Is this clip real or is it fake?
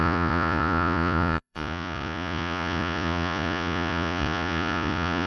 fake